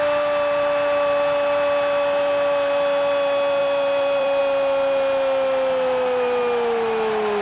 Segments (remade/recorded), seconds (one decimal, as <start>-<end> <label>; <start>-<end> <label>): 0.0-3.6 recorded; 3.6-4.4 remade; 4.4-7.4 recorded